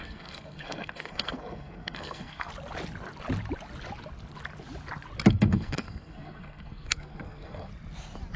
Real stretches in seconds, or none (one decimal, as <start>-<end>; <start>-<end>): 2.5-5.3; 7.7-8.4